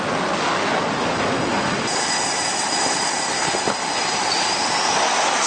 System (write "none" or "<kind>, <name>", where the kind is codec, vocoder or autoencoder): none